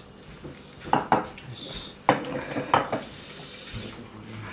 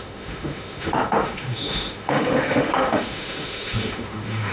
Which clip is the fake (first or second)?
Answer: second